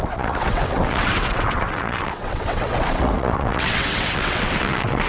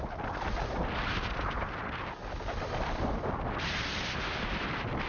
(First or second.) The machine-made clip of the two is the first